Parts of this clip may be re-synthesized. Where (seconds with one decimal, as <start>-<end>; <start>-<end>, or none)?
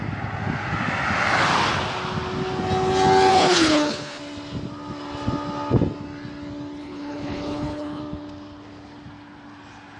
3.3-4.2; 6.8-8.0